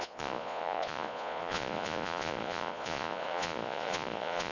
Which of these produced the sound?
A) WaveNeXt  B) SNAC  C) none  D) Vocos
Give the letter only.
D